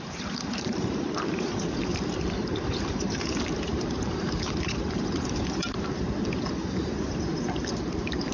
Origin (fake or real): fake